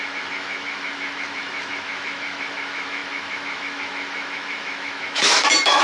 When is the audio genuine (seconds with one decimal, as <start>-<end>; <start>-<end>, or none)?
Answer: none